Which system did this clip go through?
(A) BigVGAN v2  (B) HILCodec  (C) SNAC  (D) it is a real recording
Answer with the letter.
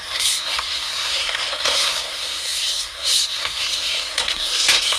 C